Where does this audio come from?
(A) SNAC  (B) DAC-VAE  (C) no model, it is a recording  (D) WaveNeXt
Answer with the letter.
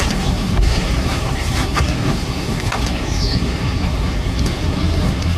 A